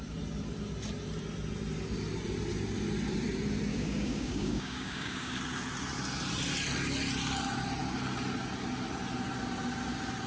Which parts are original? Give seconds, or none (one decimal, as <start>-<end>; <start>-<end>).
0.0-3.7; 5.4-10.3